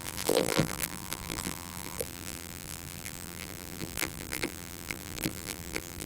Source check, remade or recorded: remade